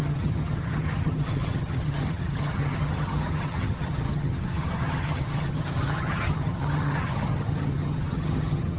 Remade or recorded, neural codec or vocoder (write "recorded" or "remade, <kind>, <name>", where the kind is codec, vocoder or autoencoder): remade, vocoder, HiFi-GAN